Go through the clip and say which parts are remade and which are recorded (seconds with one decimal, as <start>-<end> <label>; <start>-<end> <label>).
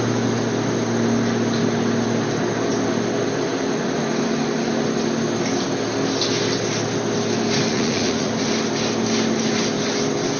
0.0-7.7 recorded; 7.7-8.3 remade; 8.3-10.4 recorded